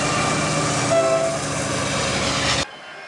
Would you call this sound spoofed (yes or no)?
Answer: no